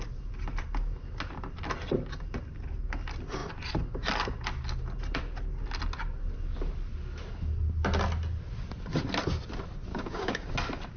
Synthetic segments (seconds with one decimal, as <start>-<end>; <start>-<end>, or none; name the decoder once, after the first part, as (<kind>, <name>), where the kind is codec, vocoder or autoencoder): 9.9-10.5 (codec, DAC)

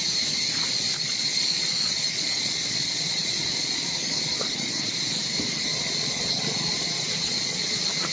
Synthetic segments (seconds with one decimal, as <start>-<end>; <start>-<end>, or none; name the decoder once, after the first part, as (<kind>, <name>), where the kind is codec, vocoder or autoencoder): 0.9-4.7 (vocoder, Vocos); 5.7-8.1